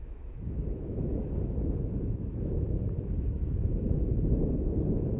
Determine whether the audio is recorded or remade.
remade